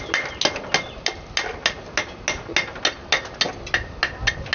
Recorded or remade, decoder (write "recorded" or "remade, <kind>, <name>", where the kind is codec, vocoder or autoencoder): recorded